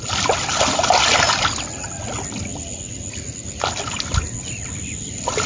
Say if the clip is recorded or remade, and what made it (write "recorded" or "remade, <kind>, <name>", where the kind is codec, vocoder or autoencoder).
recorded